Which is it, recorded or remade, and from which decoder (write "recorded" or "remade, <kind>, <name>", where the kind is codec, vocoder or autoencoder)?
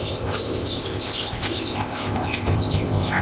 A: remade, codec, ZipCodec